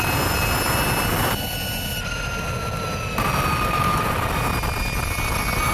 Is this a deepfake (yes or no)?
no